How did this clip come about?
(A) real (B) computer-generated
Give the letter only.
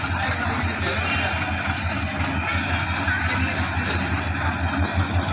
A